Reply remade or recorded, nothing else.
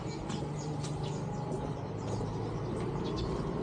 recorded